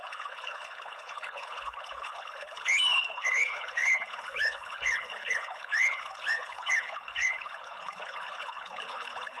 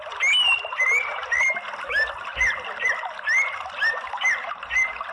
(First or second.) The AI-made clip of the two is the first